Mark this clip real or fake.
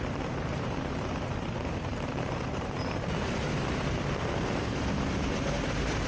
fake